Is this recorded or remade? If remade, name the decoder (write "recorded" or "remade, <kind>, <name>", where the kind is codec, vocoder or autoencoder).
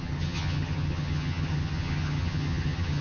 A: remade, vocoder, HiFi-GAN